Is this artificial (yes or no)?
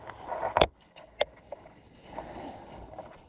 no